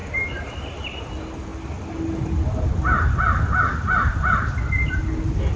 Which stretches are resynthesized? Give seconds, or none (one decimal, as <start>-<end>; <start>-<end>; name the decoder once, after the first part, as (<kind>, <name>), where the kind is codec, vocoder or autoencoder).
none